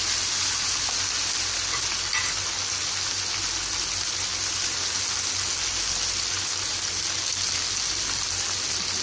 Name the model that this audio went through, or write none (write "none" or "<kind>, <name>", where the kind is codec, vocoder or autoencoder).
none